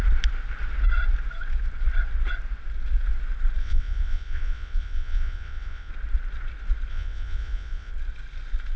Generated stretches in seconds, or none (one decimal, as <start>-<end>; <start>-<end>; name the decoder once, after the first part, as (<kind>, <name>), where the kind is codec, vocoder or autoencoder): 3.6-5.9 (vocoder, WaveNeXt); 6.9-7.9